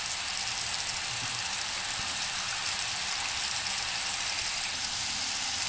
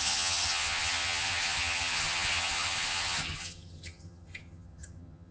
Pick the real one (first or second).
first